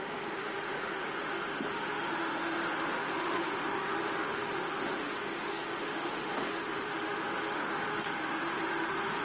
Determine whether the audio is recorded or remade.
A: remade